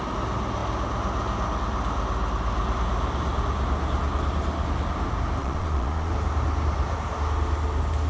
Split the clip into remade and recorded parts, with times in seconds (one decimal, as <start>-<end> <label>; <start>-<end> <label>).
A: 0.0-5.4 recorded; 5.4-6.1 remade; 6.1-8.1 recorded